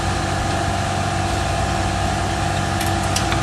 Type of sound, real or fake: real